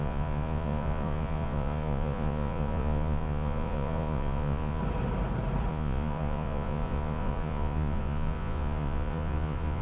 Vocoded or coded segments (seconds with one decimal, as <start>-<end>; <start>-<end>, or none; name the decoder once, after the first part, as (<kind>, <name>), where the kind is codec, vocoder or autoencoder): 0.0-4.8 (vocoder, Vocos); 5.7-9.8